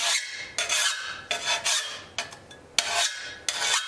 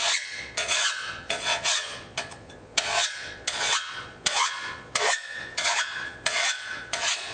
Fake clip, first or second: second